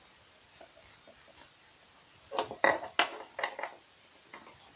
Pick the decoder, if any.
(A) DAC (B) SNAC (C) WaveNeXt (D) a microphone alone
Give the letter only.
D